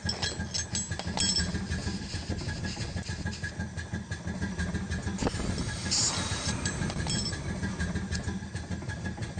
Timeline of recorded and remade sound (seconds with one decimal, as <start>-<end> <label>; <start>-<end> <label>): 0.0-5.8 recorded; 5.8-7.0 remade; 7.0-9.4 recorded